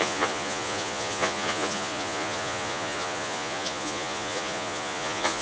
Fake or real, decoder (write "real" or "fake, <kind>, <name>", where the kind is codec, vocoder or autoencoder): fake, vocoder, Vocos